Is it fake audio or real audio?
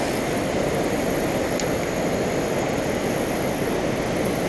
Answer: real